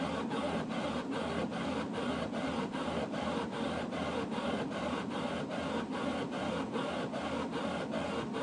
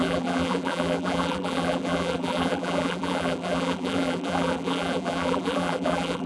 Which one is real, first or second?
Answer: first